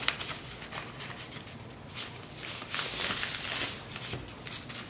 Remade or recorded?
recorded